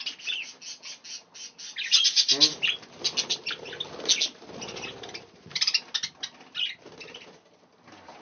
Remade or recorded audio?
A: recorded